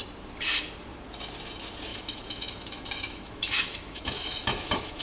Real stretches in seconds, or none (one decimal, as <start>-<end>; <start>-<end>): 0.0-1.9